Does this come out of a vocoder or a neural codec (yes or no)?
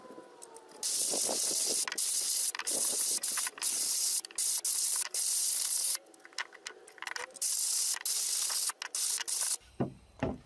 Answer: no